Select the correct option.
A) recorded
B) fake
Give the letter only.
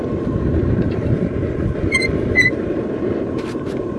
B